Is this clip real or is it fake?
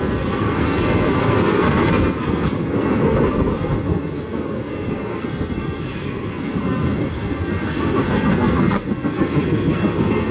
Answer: fake